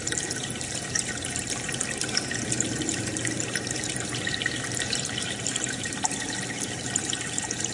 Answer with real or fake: fake